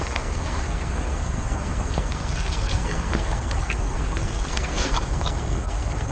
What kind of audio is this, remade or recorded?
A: remade